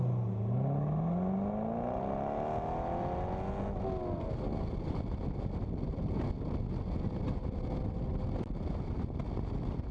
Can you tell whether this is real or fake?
real